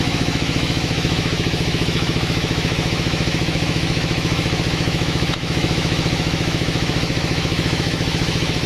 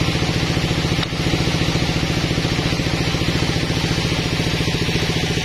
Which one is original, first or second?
second